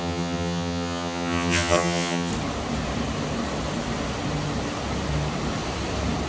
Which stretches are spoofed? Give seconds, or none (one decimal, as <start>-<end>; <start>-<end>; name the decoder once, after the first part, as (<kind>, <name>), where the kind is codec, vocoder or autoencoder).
0.0-2.3 (vocoder, HiFi-GAN)